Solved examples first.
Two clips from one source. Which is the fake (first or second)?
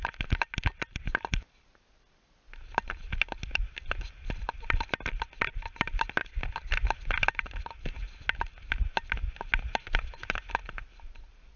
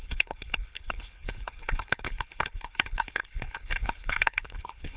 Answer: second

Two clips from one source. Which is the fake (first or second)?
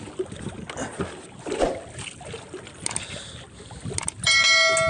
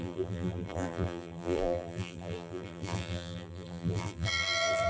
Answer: second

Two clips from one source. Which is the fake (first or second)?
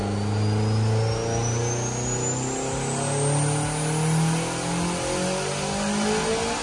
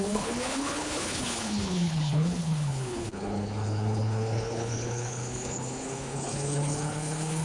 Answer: second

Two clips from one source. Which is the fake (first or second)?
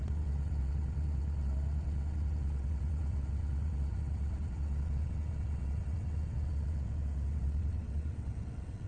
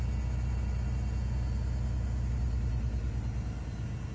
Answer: first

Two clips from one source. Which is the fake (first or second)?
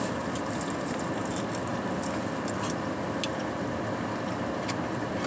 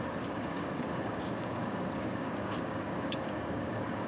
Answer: second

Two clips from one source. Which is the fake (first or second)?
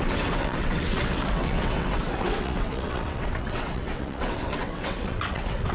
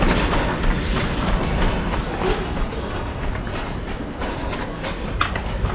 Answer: first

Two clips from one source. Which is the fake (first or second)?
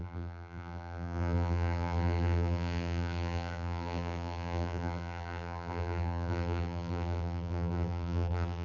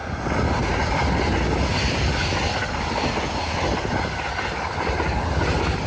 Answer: first